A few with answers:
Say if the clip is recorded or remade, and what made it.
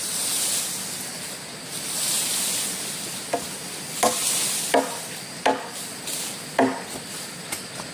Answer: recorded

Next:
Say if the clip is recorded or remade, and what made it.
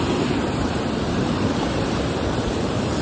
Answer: remade, vocoder, BigVGAN v2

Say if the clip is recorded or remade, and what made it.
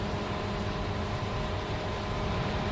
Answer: recorded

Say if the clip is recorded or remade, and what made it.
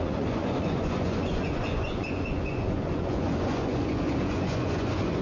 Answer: remade, vocoder, Vocos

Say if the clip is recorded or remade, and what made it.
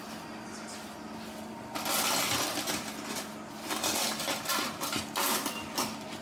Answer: recorded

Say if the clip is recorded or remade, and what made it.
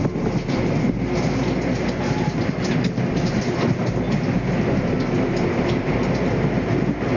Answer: recorded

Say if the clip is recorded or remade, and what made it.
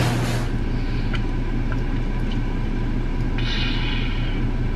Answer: recorded